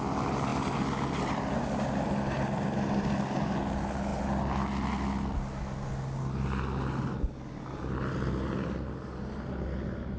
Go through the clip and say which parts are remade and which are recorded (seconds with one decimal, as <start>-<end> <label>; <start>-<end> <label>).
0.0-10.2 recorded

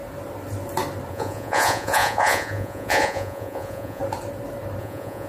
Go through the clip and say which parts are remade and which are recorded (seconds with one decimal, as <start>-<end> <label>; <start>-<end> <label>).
0.0-1.1 recorded; 1.1-4.0 remade; 4.0-4.8 recorded; 4.8-5.3 remade

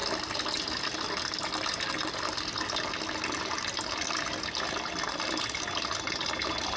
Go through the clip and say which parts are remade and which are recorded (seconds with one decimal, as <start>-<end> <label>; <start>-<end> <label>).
0.0-6.8 recorded